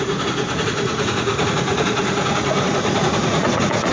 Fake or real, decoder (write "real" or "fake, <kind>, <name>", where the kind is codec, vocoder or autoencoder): fake, vocoder, Vocos